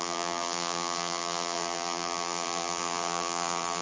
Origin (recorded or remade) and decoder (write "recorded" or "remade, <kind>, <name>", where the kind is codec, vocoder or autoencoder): remade, vocoder, BigVGAN v2